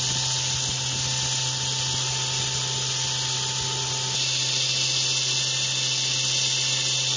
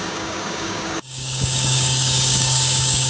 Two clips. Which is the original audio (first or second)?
first